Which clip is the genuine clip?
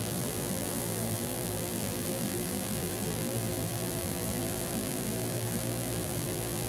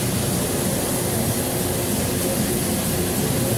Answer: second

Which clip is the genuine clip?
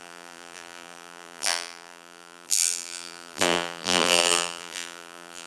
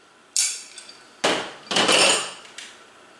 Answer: second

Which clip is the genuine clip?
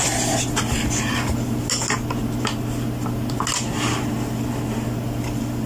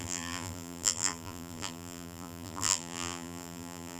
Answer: first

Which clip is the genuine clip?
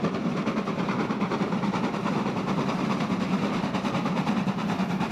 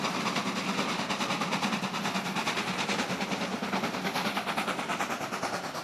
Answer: second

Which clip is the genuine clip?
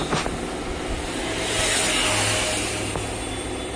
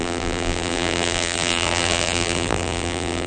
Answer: first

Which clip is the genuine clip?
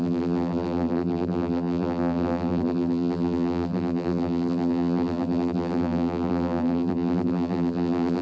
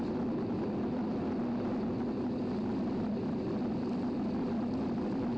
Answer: second